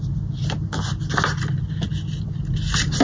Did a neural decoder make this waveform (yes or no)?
no